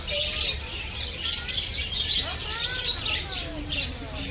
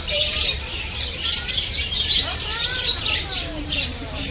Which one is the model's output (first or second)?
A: second